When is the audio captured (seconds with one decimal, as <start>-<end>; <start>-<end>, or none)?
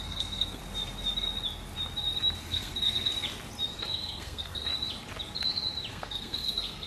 0.6-2.4; 3.1-3.7; 4.7-5.9